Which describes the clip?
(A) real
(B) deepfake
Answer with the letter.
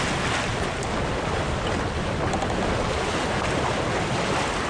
A